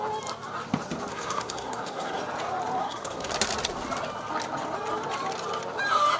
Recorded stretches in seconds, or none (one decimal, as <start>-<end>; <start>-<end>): 0.0-1.1; 2.2-2.8; 3.3-6.2